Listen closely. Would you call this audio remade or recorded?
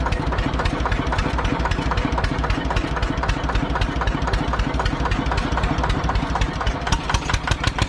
recorded